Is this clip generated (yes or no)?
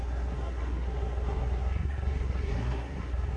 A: yes